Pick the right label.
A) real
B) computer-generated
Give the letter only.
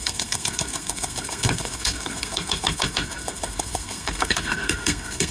B